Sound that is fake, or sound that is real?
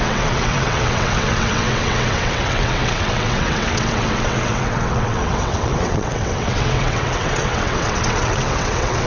fake